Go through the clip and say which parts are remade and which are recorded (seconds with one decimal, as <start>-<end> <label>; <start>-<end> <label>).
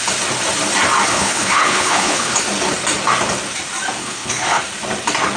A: 0.0-1.1 recorded; 1.1-2.4 remade; 2.4-4.0 recorded; 4.0-4.6 remade; 4.6-5.4 recorded